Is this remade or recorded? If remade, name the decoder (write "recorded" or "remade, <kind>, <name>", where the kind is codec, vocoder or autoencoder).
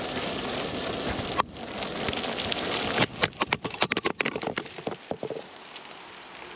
remade, vocoder, BigVGAN v2